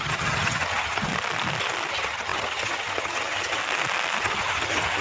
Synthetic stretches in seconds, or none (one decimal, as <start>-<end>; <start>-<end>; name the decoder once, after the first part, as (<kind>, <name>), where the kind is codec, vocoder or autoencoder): 0.0-1.1 (vocoder, HiFi-GAN); 1.9-3.6; 4.2-5.0